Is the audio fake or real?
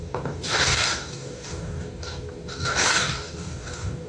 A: fake